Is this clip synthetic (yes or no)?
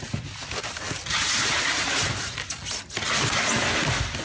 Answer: no